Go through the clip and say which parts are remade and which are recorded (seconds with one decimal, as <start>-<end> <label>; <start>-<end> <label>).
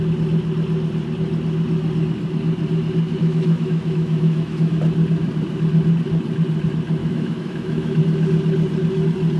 0.0-3.2 recorded; 3.2-4.7 remade; 4.7-7.0 recorded; 7.0-8.0 remade; 8.0-9.4 recorded